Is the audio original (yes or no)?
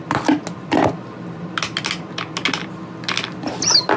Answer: yes